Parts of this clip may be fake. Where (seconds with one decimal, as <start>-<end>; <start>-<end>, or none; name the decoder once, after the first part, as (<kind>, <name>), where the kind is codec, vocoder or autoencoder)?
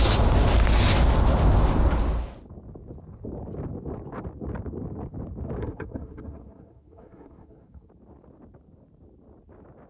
5.6-7.9 (codec, SNAC)